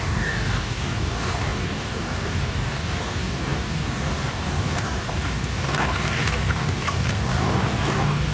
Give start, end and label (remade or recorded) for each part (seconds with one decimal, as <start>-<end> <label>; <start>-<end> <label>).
0.0-8.3 remade